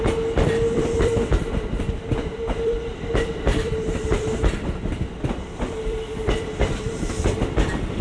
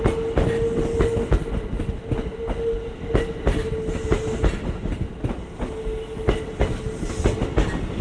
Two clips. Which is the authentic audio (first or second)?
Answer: second